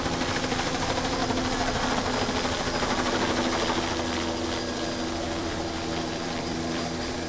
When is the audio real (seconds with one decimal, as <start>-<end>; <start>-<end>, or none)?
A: 1.2-5.4